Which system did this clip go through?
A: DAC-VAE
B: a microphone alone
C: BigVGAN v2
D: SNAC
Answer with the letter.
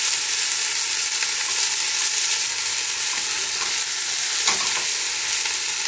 B